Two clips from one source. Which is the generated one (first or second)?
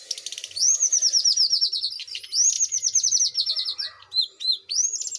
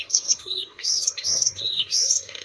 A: second